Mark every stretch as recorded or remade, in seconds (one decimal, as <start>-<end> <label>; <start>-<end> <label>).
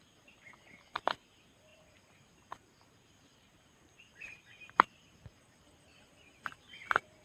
0.0-1.7 recorded; 1.7-6.0 remade; 6.0-7.2 recorded